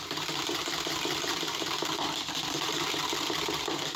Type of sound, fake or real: real